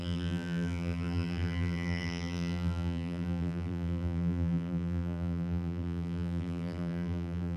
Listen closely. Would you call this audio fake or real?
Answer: fake